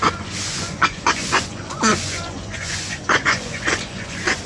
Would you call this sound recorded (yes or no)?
no